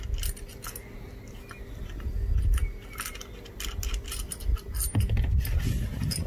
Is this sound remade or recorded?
recorded